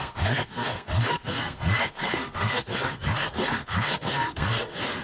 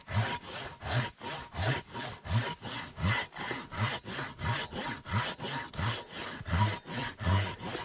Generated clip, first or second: first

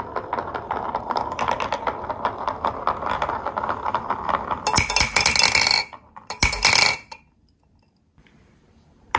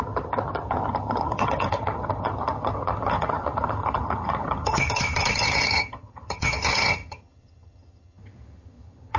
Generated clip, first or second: second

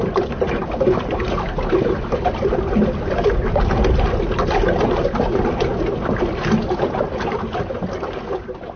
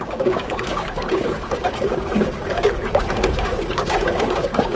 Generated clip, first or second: second